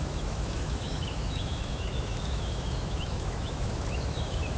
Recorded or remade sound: remade